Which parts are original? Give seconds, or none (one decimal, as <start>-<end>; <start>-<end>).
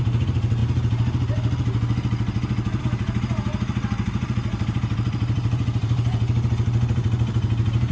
0.6-2.8